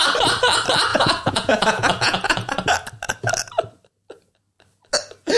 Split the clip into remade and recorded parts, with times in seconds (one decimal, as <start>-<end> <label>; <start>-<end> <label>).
0.0-0.9 recorded; 0.9-2.5 remade; 2.5-5.4 recorded